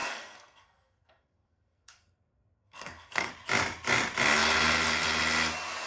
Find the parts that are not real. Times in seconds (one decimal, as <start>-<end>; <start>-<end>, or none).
0.0-3.3